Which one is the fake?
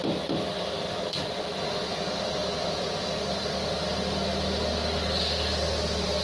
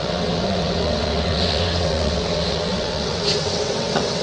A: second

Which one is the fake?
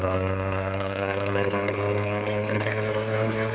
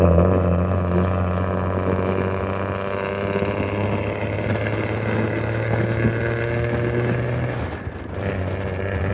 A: first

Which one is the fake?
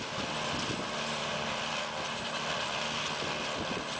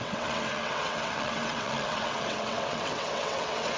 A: second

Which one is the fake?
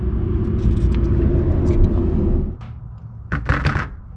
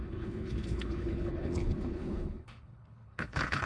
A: second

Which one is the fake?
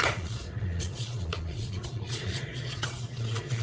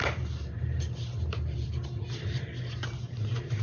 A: first